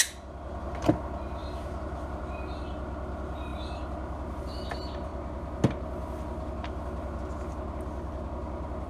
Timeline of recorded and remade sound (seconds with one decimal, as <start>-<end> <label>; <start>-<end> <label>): 0.0-1.4 recorded; 1.4-2.2 remade; 2.2-8.9 recorded